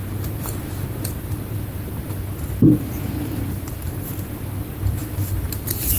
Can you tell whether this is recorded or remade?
remade